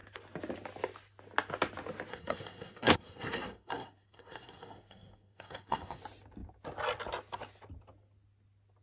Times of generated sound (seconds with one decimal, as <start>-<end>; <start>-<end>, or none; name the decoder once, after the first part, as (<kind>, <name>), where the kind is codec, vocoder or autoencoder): 2.1-6.0 (codec, SNAC)